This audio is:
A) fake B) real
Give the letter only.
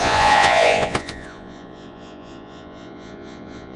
A